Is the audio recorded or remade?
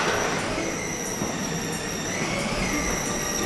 recorded